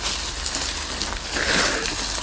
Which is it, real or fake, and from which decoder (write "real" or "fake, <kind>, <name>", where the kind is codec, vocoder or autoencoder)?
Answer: real